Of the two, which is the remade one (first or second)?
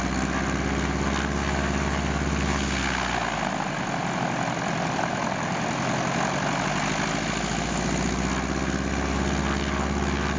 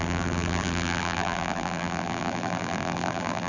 second